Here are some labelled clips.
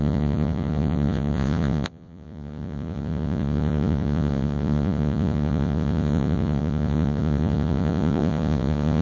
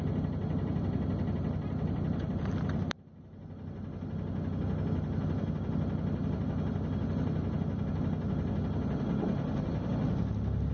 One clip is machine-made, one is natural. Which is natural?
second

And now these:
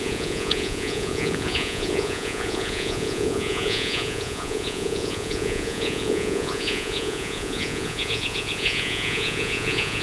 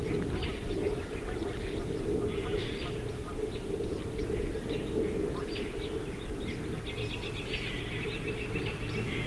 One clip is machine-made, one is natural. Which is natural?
second